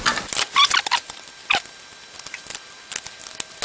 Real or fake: real